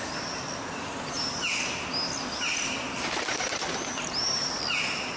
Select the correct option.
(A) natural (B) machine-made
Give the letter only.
A